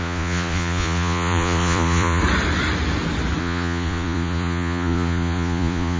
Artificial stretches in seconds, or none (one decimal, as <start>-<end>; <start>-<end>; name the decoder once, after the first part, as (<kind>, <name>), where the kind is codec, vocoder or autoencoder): 0.0-2.2 (vocoder, Vocos); 3.4-6.0